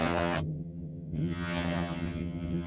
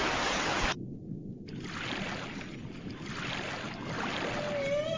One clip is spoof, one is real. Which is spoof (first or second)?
first